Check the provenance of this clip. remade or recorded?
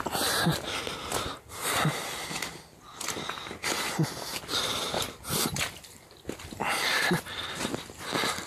recorded